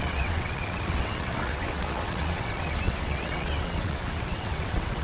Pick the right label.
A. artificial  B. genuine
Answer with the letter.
A